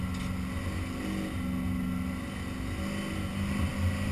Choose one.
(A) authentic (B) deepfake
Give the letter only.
A